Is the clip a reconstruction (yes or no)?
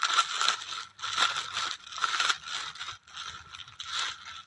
no